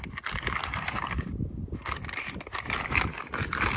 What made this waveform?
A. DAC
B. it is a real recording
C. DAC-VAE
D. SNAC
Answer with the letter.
B